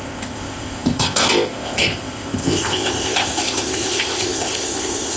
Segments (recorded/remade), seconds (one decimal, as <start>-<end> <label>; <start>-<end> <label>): 0.0-5.2 remade